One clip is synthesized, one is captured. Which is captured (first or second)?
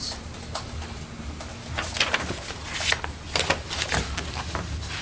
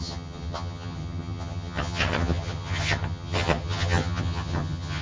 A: first